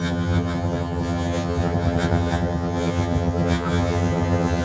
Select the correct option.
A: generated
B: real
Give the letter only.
A